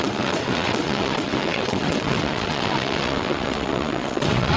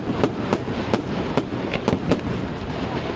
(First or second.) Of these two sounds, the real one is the second